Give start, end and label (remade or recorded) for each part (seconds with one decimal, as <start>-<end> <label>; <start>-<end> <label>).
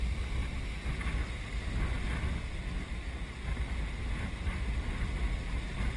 0.0-6.0 recorded